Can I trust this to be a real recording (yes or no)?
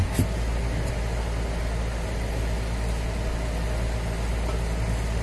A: yes